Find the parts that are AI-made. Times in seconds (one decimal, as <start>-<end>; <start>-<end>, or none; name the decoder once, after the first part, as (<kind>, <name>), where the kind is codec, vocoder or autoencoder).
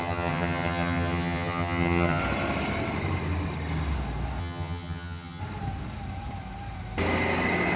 0.0-2.2 (vocoder, HiFi-GAN); 4.4-5.4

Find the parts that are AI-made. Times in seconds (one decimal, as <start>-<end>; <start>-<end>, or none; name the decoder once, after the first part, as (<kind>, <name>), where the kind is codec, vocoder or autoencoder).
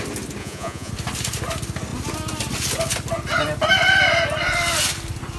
0.4-0.9 (vocoder, Vocos)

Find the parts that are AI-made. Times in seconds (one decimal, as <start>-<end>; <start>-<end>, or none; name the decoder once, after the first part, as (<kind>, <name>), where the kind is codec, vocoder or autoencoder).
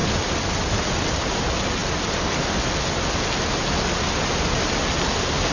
none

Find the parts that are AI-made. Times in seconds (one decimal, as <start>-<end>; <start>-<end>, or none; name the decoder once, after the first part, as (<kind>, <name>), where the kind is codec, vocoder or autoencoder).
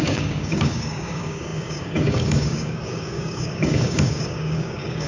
0.0-5.1 (codec, DAC)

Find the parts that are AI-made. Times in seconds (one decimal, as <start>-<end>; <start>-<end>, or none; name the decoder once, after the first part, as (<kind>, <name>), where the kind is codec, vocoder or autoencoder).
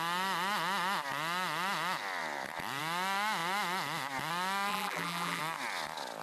4.7-5.4 (vocoder, BigVGAN v2)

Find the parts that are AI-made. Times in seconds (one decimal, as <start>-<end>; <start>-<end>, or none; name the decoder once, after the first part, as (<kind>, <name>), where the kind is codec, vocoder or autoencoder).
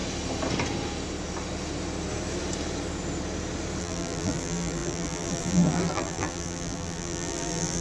3.8-7.8 (vocoder, BigVGAN v2)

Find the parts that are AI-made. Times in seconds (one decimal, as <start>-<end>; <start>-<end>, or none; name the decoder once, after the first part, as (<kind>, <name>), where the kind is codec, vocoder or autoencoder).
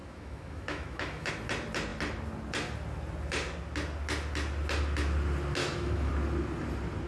0.0-1.3 (autoencoder, DAC-VAE); 5.6-6.1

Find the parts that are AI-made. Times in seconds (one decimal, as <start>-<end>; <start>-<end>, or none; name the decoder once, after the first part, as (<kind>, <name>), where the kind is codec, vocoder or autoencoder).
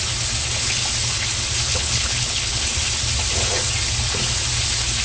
1.7-2.6 (codec, HILCodec)